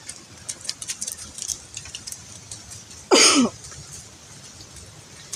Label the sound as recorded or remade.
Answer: recorded